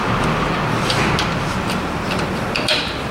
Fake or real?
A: fake